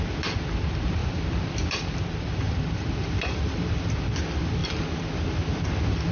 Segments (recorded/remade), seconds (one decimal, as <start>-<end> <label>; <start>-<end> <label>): 0.0-1.0 recorded; 1.0-3.9 remade; 3.9-6.1 recorded